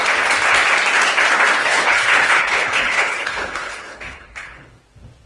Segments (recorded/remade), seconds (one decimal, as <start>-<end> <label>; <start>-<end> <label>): 0.0-1.6 recorded; 1.6-4.8 remade; 4.8-5.3 recorded